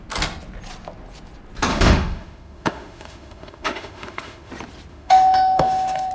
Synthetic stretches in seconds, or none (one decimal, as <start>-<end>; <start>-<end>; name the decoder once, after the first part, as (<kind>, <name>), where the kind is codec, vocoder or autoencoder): 1.7-4.5 (autoencoder, DAC-VAE); 4.9-6.1